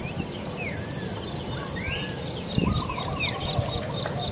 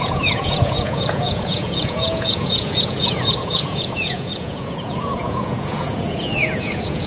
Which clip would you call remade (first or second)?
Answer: second